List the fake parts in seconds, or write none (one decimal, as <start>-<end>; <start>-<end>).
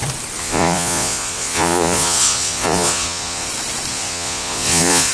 0.4-3.5; 3.9-5.1